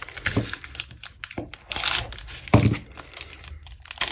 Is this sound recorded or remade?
recorded